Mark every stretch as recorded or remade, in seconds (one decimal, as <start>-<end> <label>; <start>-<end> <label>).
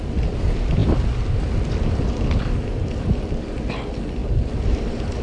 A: 0.0-4.2 recorded; 4.2-5.2 remade